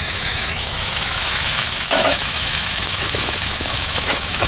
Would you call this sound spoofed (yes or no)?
yes